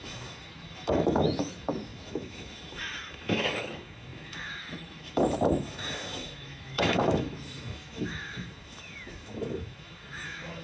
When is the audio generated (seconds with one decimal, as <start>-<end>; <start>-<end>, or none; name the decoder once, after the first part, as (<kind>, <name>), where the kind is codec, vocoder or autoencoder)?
0.0-10.6 (autoencoder, DAC-VAE)